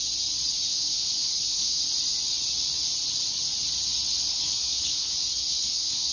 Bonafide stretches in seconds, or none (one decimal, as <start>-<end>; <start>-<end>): 0.0-0.7; 1.8-4.3; 5.1-5.5